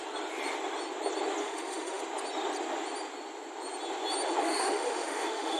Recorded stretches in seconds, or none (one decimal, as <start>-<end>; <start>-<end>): 0.0-1.4; 2.0-4.4